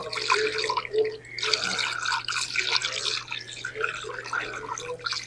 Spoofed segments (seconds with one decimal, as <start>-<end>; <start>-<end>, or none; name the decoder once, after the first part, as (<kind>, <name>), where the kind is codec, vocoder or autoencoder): none